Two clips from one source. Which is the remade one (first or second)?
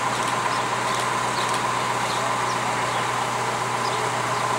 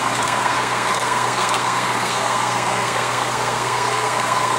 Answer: second